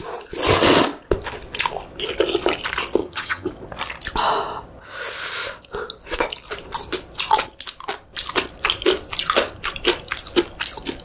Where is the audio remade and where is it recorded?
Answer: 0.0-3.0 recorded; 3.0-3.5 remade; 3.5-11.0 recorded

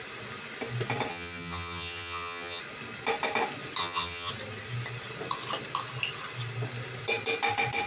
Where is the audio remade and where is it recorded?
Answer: 0.0-1.1 recorded; 1.1-2.6 remade; 2.6-3.8 recorded; 3.8-4.3 remade; 4.3-7.9 recorded

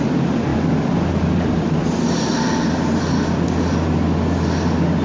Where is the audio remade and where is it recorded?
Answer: 0.0-5.0 recorded

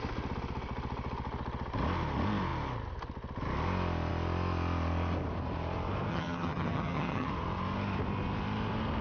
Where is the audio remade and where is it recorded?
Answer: 0.0-6.1 recorded; 6.1-7.3 remade; 7.3-9.0 recorded

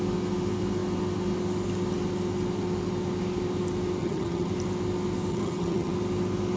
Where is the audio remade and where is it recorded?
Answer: 0.0-4.0 recorded; 4.0-4.5 remade; 4.5-5.3 recorded; 5.3-5.9 remade; 5.9-6.6 recorded